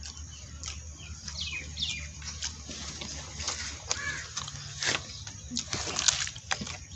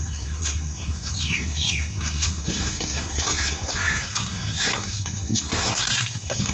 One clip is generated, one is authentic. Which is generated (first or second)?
second